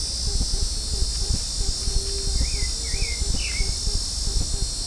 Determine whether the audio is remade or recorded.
recorded